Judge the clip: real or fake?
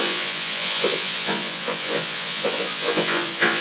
fake